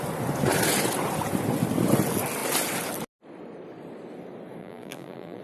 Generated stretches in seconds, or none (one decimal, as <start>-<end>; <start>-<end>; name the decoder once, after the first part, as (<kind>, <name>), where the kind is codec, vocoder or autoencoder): 4.6-5.4 (vocoder, BigVGAN v2)